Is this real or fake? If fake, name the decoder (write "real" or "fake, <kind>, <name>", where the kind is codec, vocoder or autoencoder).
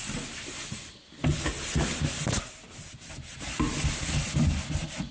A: real